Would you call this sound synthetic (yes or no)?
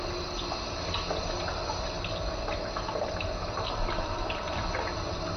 no